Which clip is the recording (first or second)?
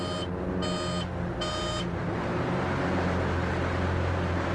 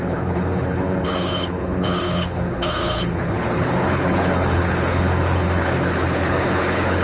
first